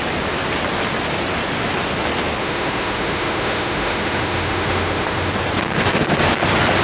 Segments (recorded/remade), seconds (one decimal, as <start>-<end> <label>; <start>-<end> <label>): 0.0-2.4 recorded; 2.4-5.3 remade; 5.3-6.8 recorded